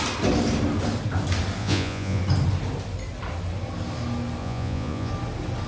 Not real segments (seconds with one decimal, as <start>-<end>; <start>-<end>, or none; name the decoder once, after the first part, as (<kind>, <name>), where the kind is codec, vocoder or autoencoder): 1.6-2.2 (vocoder, Vocos); 4.4-5.1